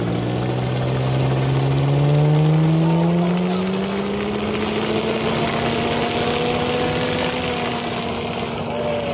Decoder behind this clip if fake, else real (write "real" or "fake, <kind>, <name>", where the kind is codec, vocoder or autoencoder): real